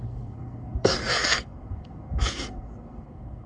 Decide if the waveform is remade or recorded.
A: remade